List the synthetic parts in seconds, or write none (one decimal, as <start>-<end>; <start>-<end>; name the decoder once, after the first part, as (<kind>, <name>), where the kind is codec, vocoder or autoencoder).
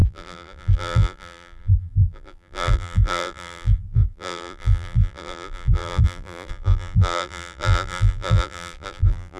0.0-9.4 (vocoder, BigVGAN v2)